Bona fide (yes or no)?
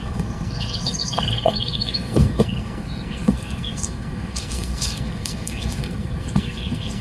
no